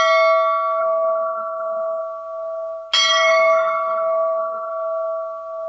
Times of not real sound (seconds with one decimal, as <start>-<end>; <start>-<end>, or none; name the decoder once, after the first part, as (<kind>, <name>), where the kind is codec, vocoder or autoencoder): 0.8-2.0 (codec, SNAC); 3.1-4.7